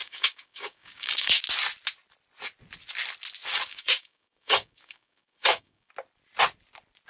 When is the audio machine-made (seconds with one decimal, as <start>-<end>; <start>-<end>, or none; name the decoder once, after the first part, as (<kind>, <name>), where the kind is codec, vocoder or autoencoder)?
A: 0.0-1.4 (codec, DAC); 3.7-5.9